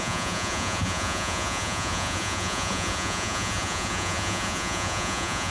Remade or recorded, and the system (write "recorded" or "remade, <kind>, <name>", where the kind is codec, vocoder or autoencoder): remade, vocoder, Vocos